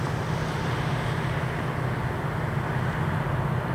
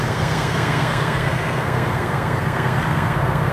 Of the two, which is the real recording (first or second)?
first